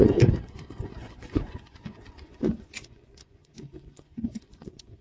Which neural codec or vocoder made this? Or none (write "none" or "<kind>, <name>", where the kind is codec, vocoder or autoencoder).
vocoder, Vocos